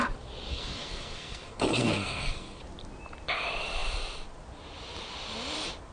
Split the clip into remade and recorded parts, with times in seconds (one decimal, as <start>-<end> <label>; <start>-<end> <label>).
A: 0.0-0.5 recorded; 0.5-2.6 remade; 2.6-5.9 recorded